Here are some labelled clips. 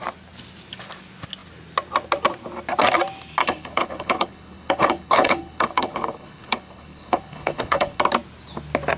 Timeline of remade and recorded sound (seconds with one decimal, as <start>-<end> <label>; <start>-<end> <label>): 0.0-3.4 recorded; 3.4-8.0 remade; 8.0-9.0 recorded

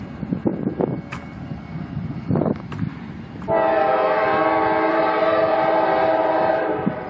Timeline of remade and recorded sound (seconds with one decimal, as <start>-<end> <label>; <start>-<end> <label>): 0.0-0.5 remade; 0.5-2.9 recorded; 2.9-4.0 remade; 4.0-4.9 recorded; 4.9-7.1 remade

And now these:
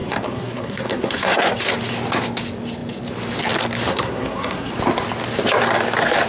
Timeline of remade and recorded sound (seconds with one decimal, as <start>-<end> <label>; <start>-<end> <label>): 0.0-1.5 remade; 1.5-3.9 recorded; 3.9-4.7 remade; 4.7-6.3 recorded

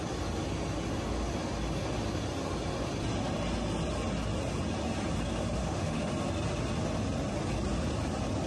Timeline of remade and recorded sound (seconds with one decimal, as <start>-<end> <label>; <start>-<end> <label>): 0.0-5.6 recorded; 5.6-6.1 remade; 6.1-8.5 recorded